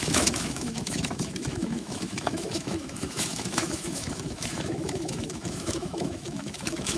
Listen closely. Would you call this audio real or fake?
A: fake